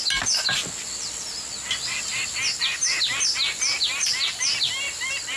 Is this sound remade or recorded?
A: recorded